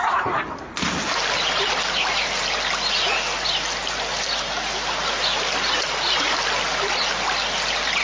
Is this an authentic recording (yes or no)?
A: yes